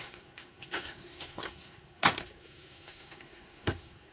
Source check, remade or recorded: remade